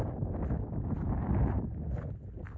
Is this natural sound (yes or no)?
yes